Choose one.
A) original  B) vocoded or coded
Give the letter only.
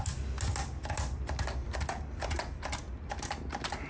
A